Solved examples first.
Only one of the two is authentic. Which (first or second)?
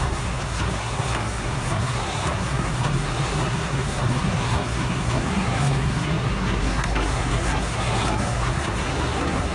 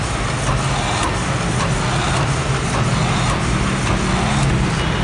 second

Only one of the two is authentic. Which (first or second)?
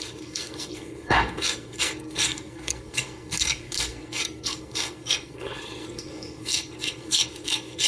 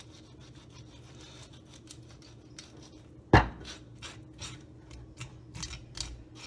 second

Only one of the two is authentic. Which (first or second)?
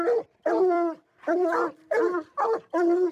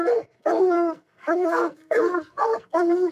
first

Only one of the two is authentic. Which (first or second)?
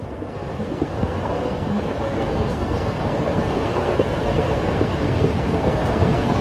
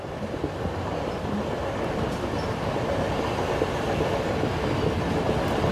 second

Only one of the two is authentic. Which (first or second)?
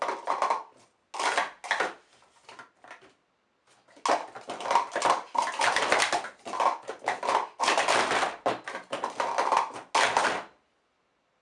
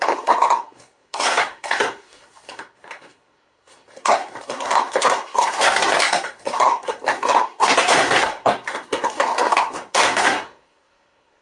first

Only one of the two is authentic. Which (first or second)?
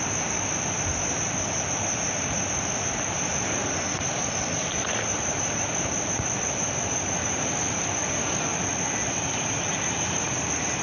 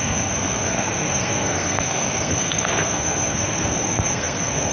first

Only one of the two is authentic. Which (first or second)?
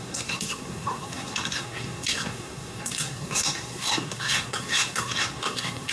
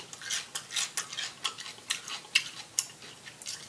second